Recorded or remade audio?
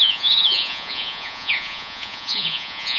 remade